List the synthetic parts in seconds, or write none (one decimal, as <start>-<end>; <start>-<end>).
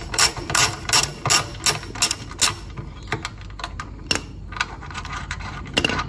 0.0-1.1; 4.8-6.1